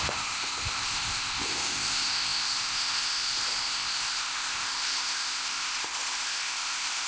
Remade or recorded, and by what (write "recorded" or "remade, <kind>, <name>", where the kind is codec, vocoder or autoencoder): remade, codec, ZipCodec